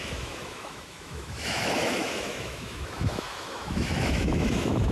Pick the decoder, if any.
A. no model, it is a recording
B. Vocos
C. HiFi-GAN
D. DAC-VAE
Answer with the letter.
D